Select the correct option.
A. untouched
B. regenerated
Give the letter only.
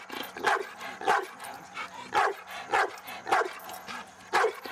A